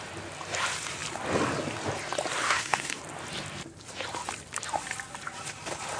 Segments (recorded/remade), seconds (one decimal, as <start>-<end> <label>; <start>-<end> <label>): 0.0-2.4 recorded; 2.4-3.0 remade; 3.0-6.0 recorded